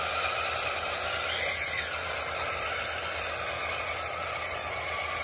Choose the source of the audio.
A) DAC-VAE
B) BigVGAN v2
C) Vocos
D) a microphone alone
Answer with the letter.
D